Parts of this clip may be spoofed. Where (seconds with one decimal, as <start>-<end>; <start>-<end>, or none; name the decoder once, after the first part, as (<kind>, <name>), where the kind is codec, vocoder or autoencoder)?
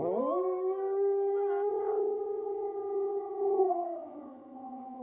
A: 1.7-5.0 (vocoder, HiFi-GAN)